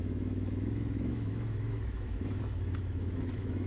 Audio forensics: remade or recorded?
remade